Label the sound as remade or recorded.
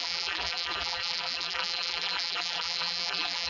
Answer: remade